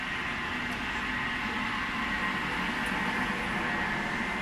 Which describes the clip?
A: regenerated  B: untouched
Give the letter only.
B